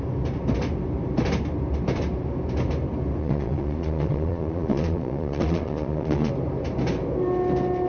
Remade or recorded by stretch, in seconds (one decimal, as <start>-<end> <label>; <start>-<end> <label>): 0.0-3.2 recorded; 3.2-6.3 remade; 6.3-7.9 recorded